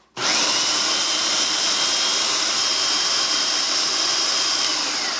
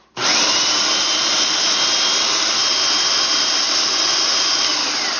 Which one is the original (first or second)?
second